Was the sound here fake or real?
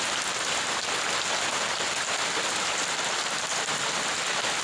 real